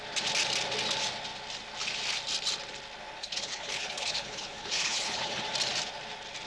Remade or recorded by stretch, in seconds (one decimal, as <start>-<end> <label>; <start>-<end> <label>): 0.0-3.2 recorded; 3.2-5.4 remade; 5.4-6.5 recorded

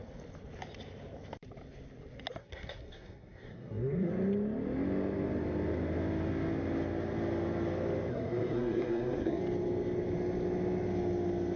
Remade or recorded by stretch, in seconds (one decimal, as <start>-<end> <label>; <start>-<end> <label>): 0.0-2.4 recorded; 2.4-4.1 remade; 4.1-8.1 recorded; 8.1-9.4 remade; 9.4-11.6 recorded

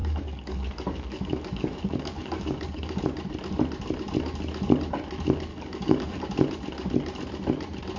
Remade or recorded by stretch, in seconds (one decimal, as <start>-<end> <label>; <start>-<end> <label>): 0.0-3.0 remade; 3.0-5.5 recorded; 5.5-6.2 remade; 6.2-8.0 recorded